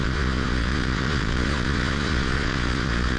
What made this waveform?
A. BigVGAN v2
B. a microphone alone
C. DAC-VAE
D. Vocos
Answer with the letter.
D